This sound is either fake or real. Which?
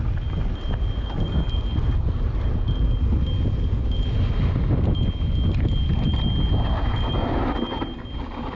real